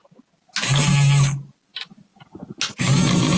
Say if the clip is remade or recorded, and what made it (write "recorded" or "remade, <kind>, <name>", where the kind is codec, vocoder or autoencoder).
recorded